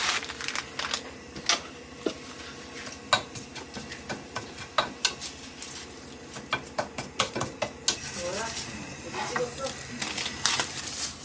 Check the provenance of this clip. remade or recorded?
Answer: recorded